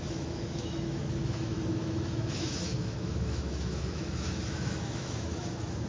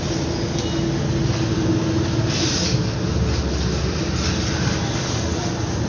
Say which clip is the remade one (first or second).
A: first